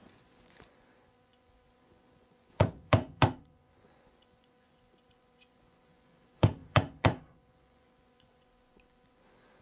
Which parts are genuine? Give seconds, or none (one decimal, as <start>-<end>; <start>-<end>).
none